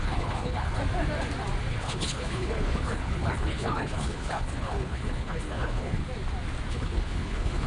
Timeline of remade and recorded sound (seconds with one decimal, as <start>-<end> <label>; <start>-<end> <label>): 0.0-0.8 remade; 0.8-1.7 recorded; 1.7-6.0 remade; 6.0-6.7 recorded; 6.7-7.7 remade